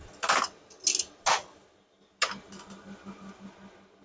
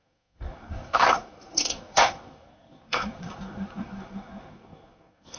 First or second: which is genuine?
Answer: first